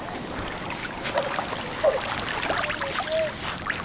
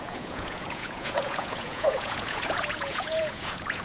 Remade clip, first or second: second